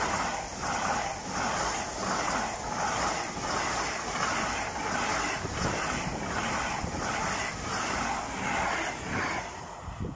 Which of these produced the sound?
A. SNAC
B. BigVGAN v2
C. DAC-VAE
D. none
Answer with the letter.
D